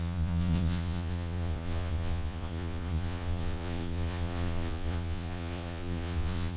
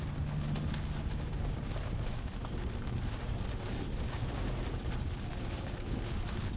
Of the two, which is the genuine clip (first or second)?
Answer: second